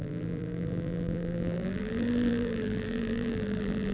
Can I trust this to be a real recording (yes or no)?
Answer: no